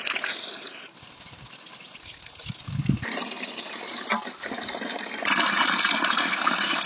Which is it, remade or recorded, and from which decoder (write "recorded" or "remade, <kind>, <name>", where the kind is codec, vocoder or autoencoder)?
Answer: recorded